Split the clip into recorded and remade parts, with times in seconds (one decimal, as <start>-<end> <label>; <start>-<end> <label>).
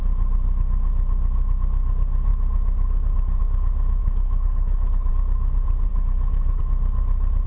0.0-4.0 recorded; 4.0-5.1 remade; 5.1-5.9 recorded; 5.9-6.6 remade; 6.6-7.5 recorded